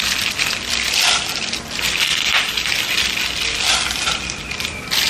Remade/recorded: recorded